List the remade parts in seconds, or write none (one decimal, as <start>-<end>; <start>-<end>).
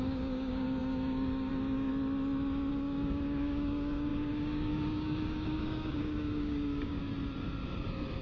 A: 0.0-1.9; 2.7-7.1